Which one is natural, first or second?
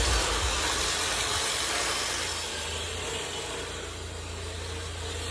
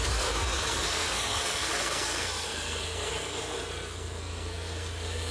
first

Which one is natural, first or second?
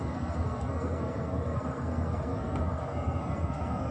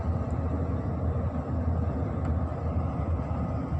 second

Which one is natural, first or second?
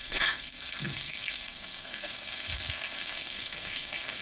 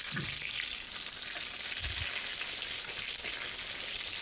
second